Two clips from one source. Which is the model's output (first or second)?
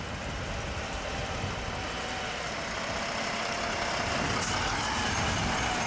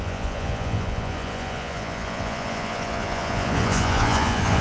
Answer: second